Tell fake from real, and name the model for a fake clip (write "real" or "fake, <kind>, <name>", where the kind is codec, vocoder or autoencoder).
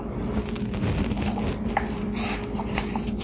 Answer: real